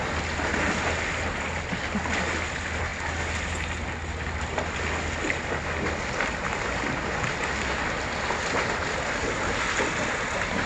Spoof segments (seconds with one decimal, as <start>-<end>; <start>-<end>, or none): none